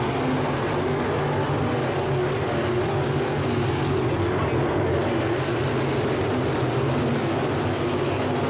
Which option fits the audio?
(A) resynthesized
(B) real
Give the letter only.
B